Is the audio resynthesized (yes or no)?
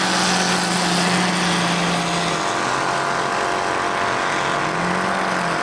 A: no